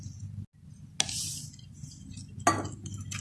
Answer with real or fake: real